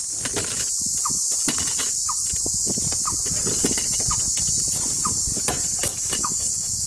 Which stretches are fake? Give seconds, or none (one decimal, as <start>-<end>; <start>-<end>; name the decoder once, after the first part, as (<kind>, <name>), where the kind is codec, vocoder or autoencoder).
5.9-6.9 (codec, DAC)